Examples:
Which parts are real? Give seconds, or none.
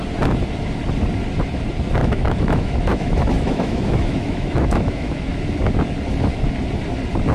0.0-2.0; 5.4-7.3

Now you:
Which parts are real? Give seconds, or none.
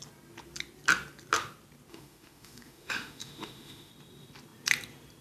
0.0-1.9; 3.9-5.2